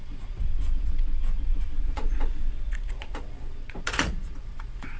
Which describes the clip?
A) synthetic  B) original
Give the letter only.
A